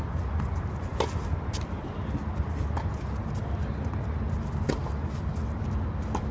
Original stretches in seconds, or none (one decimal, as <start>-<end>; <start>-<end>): 0.0-6.3